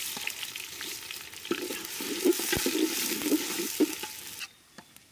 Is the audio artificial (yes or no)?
no